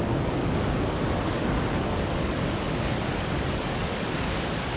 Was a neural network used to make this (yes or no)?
yes